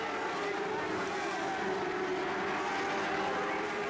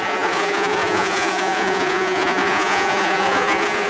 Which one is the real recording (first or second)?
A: first